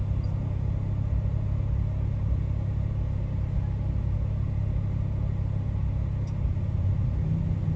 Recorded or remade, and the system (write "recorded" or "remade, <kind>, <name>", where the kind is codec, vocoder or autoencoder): recorded